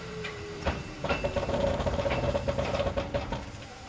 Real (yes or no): no